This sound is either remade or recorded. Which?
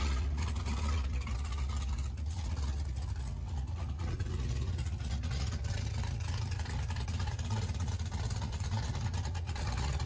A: remade